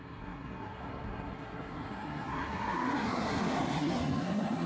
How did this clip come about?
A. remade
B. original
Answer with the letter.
A